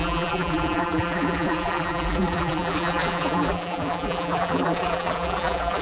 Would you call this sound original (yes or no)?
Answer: no